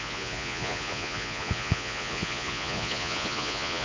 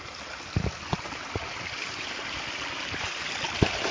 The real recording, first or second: second